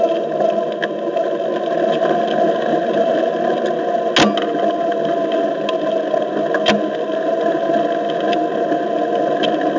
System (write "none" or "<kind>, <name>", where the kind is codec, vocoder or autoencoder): none